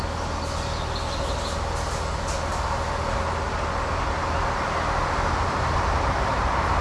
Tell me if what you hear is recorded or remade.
recorded